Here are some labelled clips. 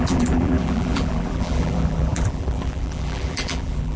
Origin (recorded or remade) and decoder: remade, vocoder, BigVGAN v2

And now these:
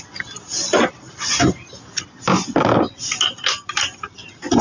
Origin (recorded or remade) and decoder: recorded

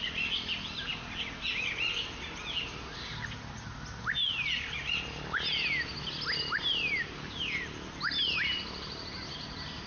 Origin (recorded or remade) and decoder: recorded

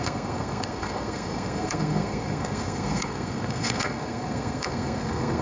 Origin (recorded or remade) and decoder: remade, codec, SNAC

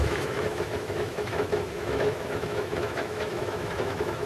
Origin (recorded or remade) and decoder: remade, autoencoder, DAC-VAE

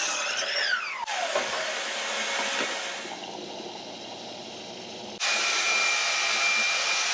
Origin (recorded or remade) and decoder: recorded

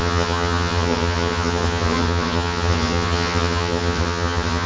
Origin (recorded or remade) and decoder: remade, vocoder, HiFi-GAN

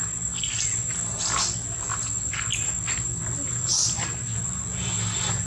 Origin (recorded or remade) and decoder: recorded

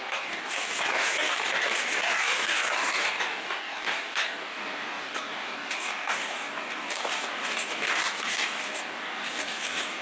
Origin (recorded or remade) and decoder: remade, codec, DAC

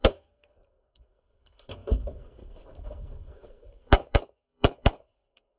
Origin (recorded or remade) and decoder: remade, codec, SNAC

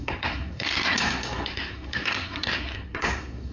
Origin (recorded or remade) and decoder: remade, codec, SNAC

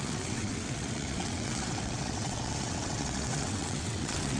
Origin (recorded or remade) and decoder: remade, vocoder, WaveNeXt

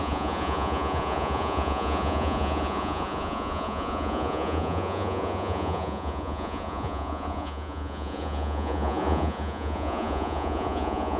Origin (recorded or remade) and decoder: remade, vocoder, Vocos